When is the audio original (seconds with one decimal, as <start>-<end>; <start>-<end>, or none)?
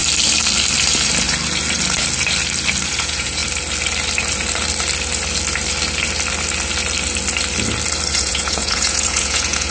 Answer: 0.0-2.9; 3.4-8.1